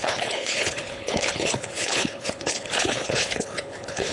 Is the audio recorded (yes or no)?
no